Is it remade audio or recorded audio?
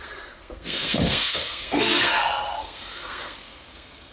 remade